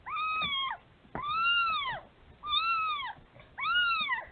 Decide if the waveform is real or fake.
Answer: real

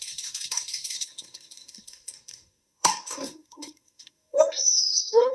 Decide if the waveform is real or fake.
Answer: fake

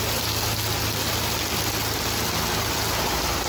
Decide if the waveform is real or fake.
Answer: real